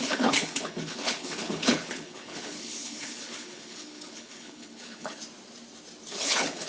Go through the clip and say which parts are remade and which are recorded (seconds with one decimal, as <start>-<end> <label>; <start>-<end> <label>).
0.0-5.2 remade; 5.2-6.1 recorded; 6.1-6.7 remade